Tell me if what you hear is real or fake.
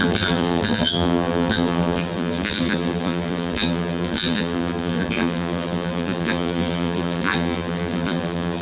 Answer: fake